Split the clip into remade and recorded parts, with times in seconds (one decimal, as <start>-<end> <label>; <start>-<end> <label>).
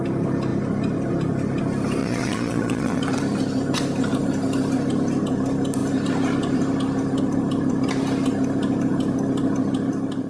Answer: 0.0-2.0 recorded; 2.0-3.0 remade; 3.0-10.3 recorded